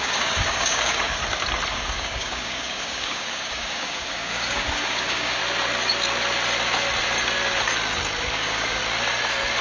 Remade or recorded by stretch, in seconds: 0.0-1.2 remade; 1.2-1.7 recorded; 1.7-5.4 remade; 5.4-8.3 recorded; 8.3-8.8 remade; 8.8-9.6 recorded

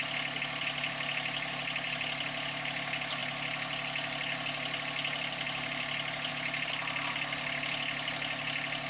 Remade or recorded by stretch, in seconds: 0.0-8.9 recorded

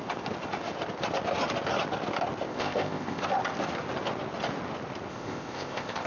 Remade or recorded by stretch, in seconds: 0.0-2.5 recorded; 2.5-3.3 remade; 3.3-5.1 recorded; 5.1-6.1 remade

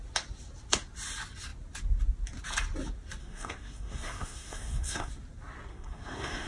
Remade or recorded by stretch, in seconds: 0.0-3.2 recorded; 3.2-5.1 remade; 5.1-5.7 recorded; 5.7-6.5 remade